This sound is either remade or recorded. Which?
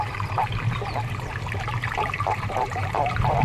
remade